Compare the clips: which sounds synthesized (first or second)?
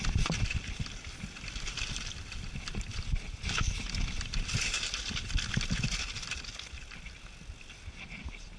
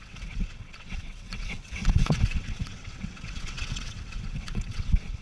second